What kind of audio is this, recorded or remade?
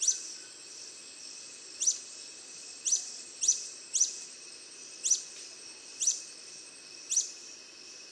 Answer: recorded